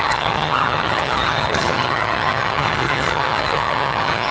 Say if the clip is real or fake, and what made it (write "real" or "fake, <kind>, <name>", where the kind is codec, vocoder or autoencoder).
fake, vocoder, HiFi-GAN